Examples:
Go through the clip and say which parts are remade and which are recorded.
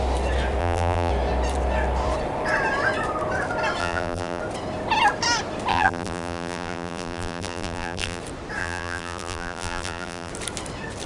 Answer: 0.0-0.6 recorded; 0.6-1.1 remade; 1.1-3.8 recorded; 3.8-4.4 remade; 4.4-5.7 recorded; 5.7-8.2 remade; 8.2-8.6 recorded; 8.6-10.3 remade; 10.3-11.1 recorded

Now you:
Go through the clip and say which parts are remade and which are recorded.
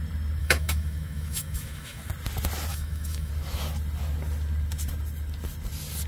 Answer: 0.0-0.4 recorded; 0.4-2.1 remade; 2.1-2.7 recorded; 2.7-3.3 remade; 3.3-6.1 recorded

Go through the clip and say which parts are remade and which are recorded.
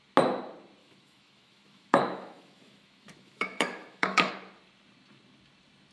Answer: 0.0-0.8 recorded; 0.8-4.3 remade; 4.3-5.9 recorded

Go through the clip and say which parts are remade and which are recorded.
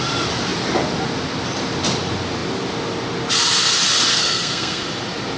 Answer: 0.0-4.1 recorded; 4.1-4.8 remade; 4.8-5.4 recorded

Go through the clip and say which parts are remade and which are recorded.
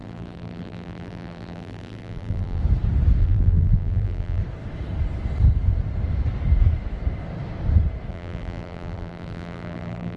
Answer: 0.0-2.6 remade; 2.6-3.2 recorded; 3.2-4.4 remade; 4.4-8.1 recorded; 8.1-10.2 remade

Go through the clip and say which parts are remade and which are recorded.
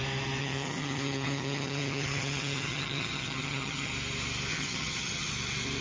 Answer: 0.0-0.4 recorded; 0.4-3.9 remade; 3.9-4.5 recorded; 4.5-5.3 remade; 5.3-5.8 recorded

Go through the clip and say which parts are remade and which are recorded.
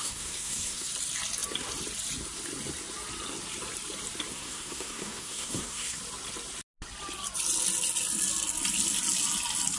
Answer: 0.0-0.9 remade; 0.9-4.3 recorded; 4.3-6.0 remade; 6.0-9.8 recorded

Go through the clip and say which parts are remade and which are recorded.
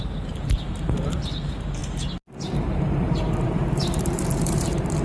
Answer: 0.0-1.8 remade; 1.8-2.8 recorded; 2.8-5.0 remade